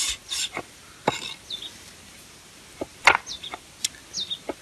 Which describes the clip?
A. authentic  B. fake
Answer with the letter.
A